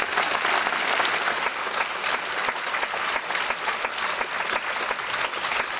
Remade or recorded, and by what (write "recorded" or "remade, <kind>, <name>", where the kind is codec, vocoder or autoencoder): recorded